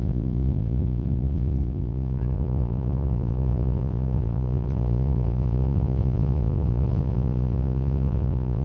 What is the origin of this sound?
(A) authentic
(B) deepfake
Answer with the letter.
B